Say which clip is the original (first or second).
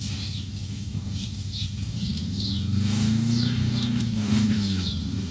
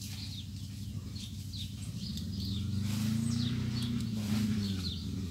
second